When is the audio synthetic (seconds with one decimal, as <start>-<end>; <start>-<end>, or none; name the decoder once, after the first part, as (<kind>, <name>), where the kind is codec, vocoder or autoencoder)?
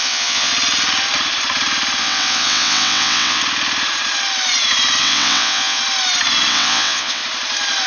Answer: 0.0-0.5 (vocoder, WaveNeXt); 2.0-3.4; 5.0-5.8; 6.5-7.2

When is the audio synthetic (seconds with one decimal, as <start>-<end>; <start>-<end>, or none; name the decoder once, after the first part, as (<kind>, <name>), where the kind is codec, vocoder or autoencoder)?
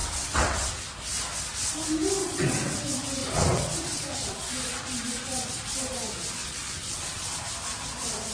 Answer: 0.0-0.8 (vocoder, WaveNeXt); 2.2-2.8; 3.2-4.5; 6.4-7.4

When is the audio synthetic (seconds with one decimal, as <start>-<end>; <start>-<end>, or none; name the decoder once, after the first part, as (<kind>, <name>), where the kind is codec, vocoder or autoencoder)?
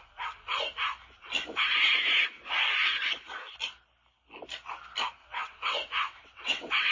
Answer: 5.2-6.9 (vocoder, WaveNeXt)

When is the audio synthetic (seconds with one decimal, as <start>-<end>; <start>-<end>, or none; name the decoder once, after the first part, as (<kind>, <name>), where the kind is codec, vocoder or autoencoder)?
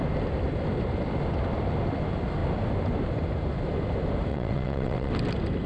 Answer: 4.3-5.1 (vocoder, WaveNeXt)